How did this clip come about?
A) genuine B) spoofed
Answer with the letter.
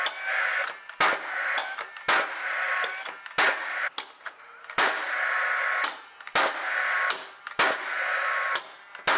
A